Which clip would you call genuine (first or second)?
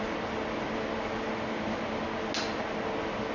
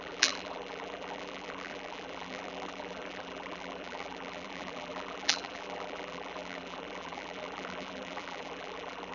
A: first